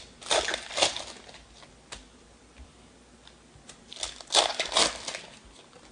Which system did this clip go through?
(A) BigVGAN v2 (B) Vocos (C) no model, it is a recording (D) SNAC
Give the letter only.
C